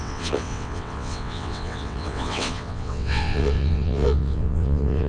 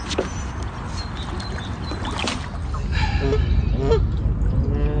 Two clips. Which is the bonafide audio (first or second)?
second